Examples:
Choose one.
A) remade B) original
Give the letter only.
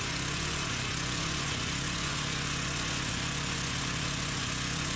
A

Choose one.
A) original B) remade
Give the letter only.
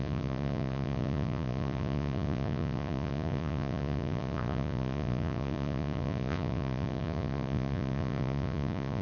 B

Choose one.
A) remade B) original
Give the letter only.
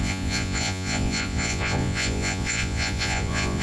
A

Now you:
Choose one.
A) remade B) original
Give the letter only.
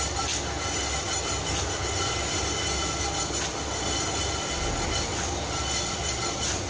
B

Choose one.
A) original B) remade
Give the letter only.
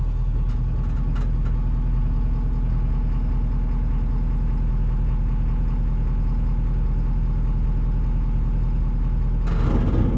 A